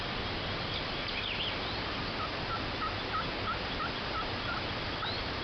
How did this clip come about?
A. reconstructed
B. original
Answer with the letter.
B